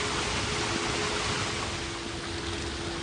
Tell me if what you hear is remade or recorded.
recorded